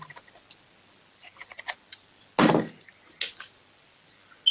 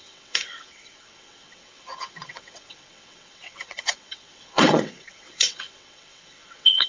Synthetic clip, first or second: second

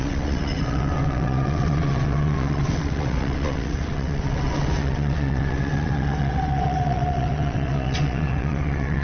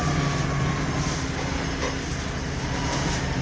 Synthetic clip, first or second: first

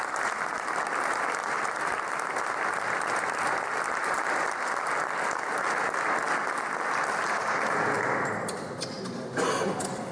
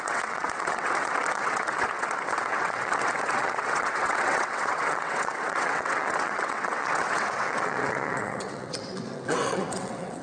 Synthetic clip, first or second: second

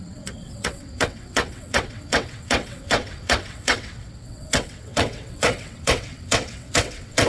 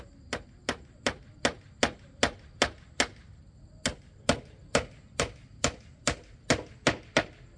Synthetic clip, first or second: first